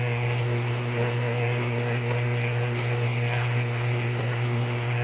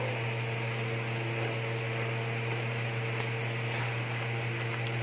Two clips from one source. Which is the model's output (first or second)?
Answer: first